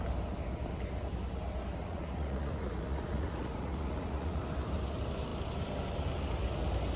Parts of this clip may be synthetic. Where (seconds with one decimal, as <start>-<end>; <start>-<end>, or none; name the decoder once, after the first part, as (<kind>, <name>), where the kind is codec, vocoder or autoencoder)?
1.8-4.4 (vocoder, Vocos)